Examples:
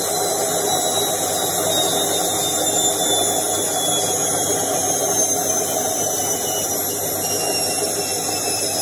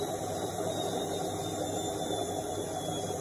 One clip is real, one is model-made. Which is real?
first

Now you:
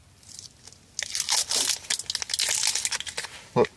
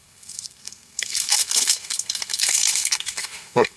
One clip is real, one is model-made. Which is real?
first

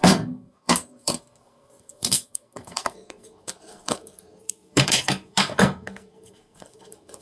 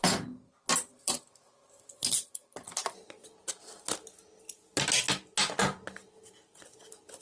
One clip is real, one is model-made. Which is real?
second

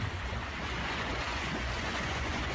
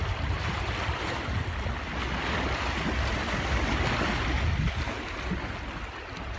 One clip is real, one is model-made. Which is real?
second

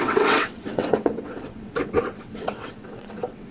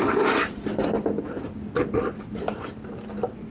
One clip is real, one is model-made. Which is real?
second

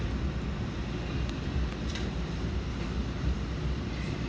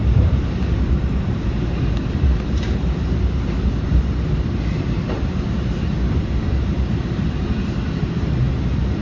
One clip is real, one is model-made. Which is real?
first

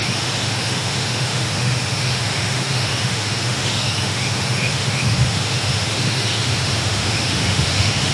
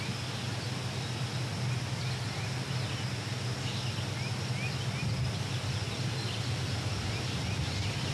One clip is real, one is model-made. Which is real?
second